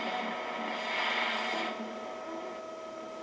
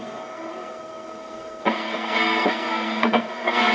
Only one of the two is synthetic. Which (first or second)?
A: second